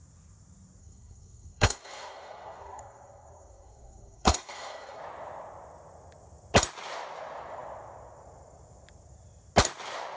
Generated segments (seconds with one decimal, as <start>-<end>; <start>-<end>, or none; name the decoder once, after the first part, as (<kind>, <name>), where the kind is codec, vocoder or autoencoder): 0.8-5.0 (codec, SNAC)

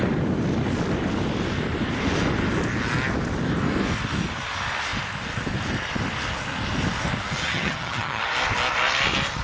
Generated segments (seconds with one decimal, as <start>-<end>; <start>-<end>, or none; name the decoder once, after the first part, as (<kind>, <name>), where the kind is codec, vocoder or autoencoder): 7.4-8.2 (vocoder, HiFi-GAN)